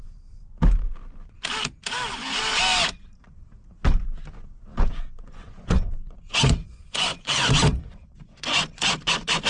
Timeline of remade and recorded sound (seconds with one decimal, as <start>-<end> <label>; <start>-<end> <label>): 0.0-4.8 recorded; 4.8-9.5 remade